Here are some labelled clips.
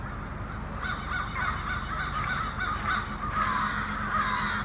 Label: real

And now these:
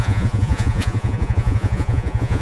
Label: fake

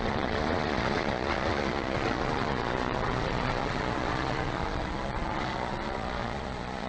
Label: fake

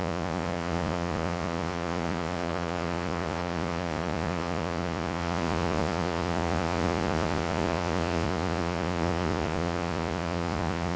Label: fake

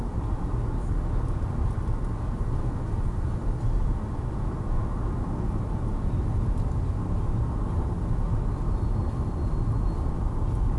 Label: real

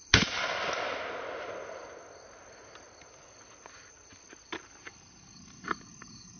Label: real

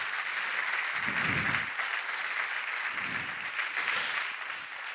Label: real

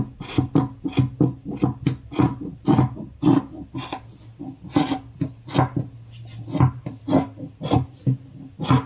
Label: real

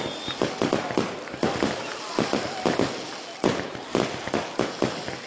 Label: real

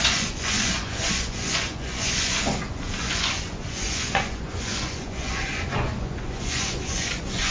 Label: fake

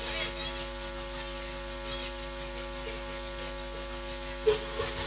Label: real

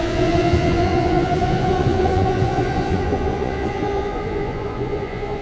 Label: fake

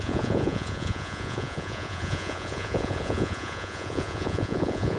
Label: fake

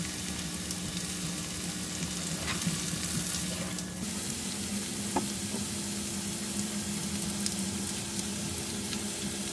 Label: real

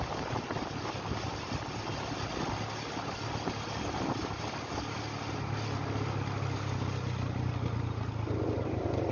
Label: real